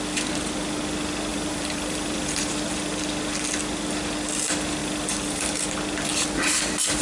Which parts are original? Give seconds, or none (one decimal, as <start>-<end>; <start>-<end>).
0.0-1.3; 3.0-4.8; 5.5-7.0